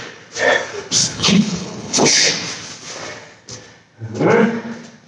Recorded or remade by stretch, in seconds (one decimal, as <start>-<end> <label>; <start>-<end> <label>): 0.0-1.0 recorded; 1.0-2.3 remade; 2.3-5.1 recorded